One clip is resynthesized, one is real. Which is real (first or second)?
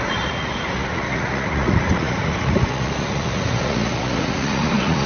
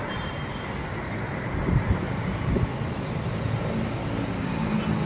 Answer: second